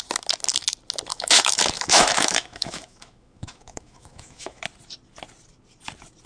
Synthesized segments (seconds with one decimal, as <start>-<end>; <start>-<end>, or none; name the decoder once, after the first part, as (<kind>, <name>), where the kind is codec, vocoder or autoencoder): 1.1-4.6 (autoencoder, DAC-VAE)